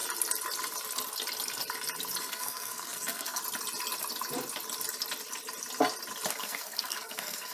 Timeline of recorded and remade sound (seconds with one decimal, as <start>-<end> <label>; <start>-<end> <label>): 0.0-2.2 recorded; 2.2-3.4 remade; 3.4-6.3 recorded; 6.3-7.5 remade